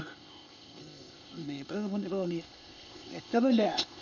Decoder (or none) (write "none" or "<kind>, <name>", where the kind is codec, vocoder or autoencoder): codec, ZipCodec